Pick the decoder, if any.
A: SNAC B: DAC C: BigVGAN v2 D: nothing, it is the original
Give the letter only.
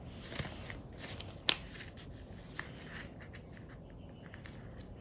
D